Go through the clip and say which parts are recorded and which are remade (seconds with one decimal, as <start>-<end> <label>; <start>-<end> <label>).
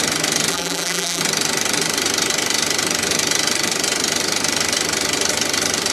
0.0-0.5 recorded; 0.5-1.2 remade; 1.2-5.9 recorded